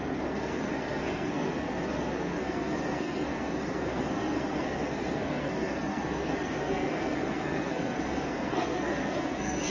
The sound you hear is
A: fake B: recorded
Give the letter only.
A